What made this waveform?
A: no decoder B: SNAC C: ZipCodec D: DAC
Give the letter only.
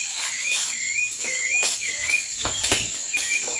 D